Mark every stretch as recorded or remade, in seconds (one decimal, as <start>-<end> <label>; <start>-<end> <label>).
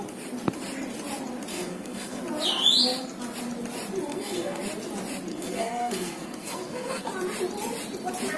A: 0.0-1.5 recorded; 1.5-2.2 remade; 2.2-4.1 recorded; 4.1-4.6 remade; 4.6-5.3 recorded; 5.3-7.1 remade; 7.1-8.4 recorded